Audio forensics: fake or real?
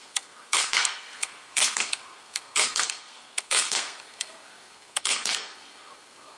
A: fake